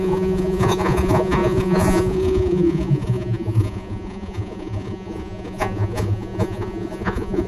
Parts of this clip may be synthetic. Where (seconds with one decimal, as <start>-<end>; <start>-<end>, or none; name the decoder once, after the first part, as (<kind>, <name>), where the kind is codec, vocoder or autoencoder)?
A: 0.0-7.5 (vocoder, Vocos)